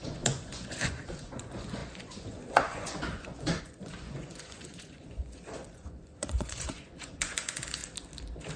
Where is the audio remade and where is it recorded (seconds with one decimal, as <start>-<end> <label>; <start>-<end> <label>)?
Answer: 0.0-7.8 remade; 7.8-8.6 recorded